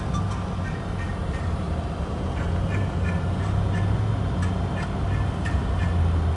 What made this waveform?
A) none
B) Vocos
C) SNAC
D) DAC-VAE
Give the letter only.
A